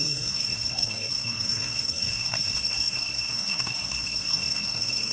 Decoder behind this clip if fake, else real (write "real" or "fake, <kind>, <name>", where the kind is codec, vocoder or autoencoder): fake, codec, SNAC